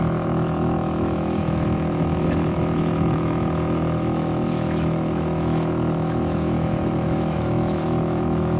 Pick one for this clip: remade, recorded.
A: remade